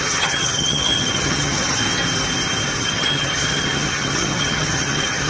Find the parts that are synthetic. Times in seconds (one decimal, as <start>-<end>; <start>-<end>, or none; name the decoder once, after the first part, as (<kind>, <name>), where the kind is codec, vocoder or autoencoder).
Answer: 0.0-1.8 (vocoder, HiFi-GAN); 2.8-5.3